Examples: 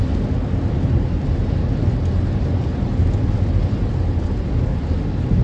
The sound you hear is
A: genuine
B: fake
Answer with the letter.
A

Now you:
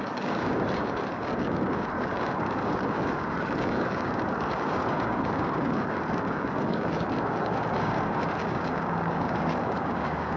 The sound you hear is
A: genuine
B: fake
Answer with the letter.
B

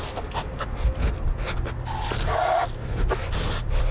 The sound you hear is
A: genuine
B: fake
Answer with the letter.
A